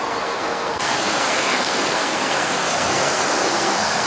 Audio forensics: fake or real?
fake